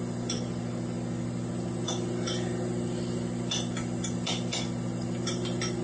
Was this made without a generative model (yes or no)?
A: yes